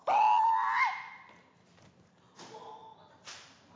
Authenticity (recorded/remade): recorded